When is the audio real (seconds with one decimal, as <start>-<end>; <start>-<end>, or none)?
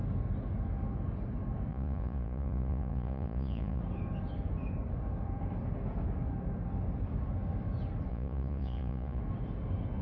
0.0-1.7; 3.8-8.1; 9.2-10.0